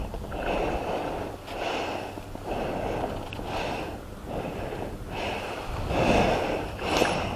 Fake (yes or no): no